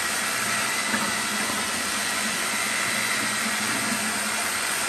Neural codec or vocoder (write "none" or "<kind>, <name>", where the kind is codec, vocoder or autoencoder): vocoder, Vocos